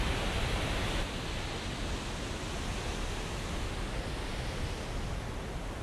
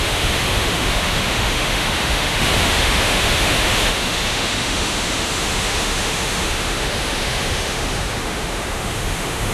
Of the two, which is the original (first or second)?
first